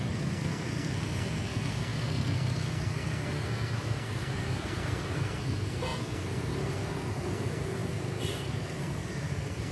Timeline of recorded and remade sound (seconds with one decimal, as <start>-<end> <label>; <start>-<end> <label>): 0.0-9.7 remade